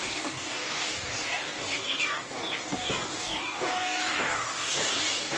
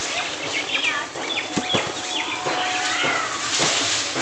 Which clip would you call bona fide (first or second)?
second